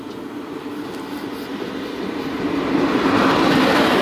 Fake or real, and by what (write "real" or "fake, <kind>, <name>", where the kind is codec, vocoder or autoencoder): real